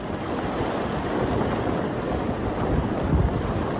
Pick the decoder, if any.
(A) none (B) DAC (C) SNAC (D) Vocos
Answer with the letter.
A